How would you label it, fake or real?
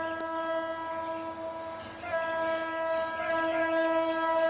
real